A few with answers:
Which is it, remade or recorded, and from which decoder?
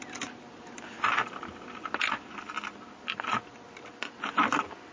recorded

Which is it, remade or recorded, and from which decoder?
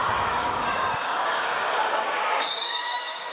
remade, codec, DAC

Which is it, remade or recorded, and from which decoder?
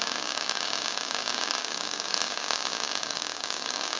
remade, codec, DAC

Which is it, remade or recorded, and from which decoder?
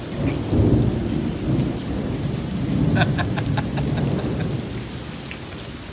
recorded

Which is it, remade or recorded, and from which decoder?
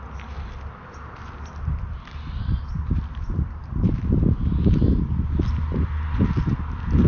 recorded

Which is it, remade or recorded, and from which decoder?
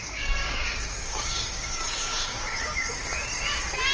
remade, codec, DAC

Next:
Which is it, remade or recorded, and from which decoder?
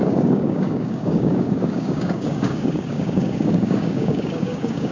remade, codec, DAC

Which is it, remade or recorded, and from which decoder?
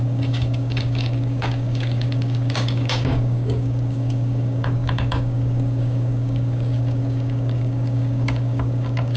remade, codec, DAC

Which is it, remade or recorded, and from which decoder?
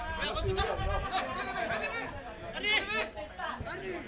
recorded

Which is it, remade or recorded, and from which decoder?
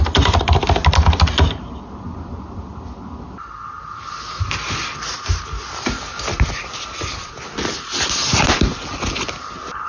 recorded